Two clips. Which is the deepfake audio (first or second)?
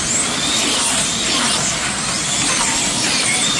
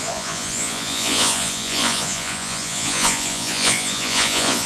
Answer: second